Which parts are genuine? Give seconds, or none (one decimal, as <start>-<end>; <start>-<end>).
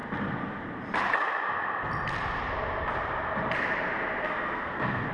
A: 0.0-4.2